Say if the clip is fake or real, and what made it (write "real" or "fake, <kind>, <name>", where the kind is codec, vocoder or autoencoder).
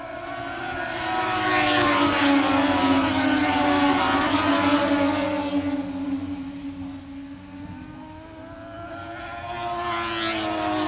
real